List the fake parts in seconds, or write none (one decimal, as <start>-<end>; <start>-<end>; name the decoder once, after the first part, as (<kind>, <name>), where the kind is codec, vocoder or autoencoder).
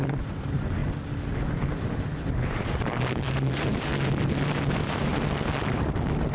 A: 0.0-0.8 (vocoder, BigVGAN v2); 1.7-3.9; 4.6-5.1; 5.7-6.3